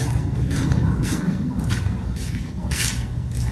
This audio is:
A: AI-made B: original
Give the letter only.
A